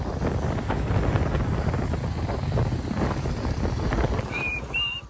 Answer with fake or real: real